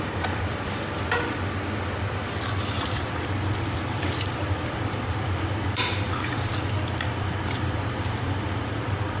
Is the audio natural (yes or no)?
no